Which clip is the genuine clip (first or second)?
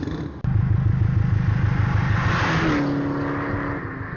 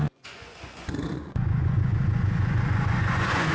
first